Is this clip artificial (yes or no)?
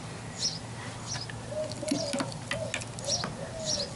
no